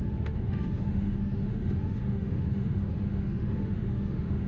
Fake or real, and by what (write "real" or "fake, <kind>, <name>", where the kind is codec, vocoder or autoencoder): fake, autoencoder, DAC-VAE